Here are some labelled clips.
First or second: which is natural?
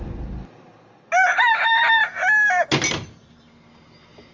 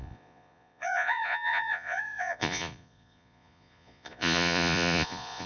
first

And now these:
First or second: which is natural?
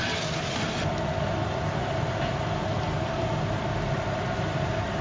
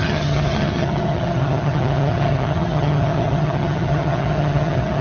first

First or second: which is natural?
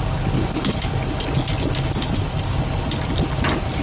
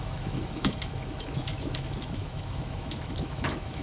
first